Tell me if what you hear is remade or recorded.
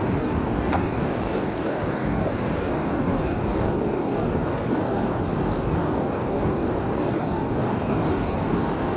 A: remade